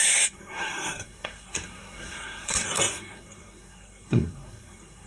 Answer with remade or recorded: remade